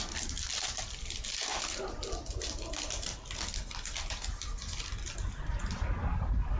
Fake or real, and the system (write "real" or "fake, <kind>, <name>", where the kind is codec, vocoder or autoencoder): real